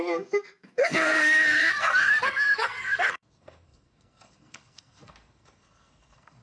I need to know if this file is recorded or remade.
remade